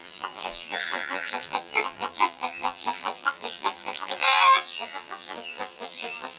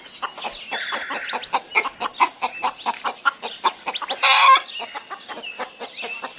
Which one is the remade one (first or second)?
first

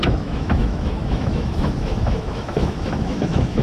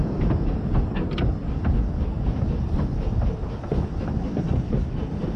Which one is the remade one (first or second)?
first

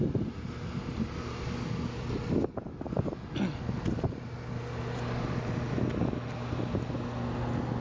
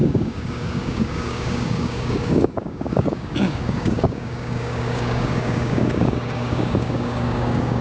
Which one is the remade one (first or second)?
second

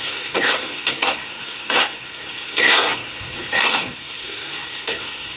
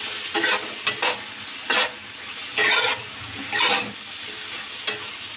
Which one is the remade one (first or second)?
first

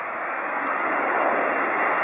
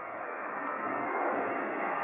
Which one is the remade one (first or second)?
second